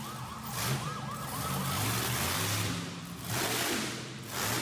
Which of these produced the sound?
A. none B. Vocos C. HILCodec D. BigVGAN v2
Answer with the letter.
A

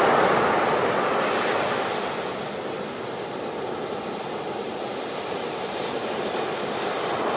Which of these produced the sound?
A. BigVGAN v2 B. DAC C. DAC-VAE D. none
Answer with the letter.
D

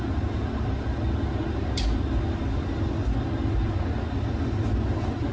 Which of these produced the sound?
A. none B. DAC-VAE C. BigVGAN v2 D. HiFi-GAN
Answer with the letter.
A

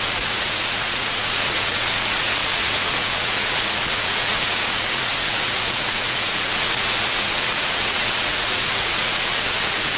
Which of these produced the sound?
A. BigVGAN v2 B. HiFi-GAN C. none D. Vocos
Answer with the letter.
D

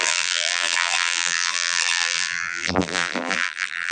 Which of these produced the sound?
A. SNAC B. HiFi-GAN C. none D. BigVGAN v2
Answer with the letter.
D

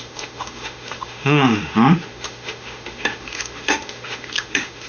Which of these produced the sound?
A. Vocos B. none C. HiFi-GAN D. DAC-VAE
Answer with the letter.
D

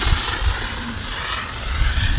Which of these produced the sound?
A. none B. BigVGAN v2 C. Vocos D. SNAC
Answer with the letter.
B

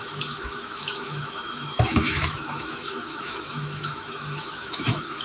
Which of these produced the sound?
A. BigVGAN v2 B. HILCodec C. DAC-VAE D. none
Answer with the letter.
C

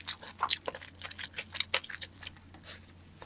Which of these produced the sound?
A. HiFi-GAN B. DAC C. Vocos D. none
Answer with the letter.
D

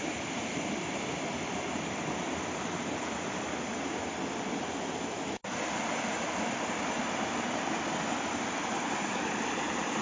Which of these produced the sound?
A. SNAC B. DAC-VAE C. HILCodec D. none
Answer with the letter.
D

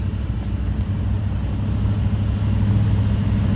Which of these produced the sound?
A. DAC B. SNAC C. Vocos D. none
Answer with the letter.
D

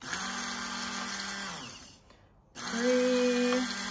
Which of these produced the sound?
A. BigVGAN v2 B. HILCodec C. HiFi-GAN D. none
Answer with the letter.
D